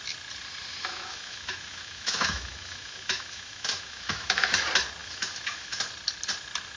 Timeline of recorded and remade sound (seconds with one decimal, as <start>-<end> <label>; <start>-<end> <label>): 0.0-0.7 recorded; 0.7-4.6 remade; 4.6-5.0 recorded; 5.0-5.8 remade; 5.8-6.8 recorded